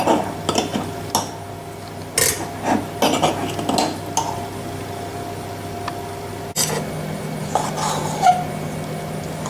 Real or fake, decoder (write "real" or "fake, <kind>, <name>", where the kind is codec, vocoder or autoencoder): real